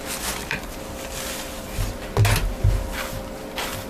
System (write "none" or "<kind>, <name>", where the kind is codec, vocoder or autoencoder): none